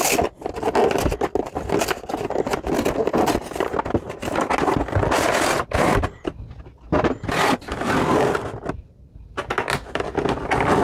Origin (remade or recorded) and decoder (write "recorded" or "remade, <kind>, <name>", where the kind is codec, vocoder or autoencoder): recorded